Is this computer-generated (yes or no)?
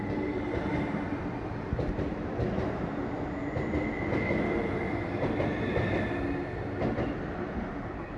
no